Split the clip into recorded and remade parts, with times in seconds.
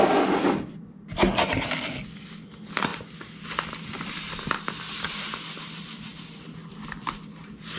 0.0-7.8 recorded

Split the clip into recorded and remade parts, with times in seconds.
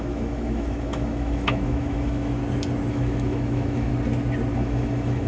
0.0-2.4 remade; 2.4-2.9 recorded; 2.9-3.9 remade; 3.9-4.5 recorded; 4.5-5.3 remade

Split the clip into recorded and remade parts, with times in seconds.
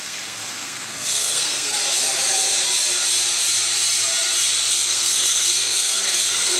0.0-1.8 remade; 1.8-4.7 recorded; 4.7-6.6 remade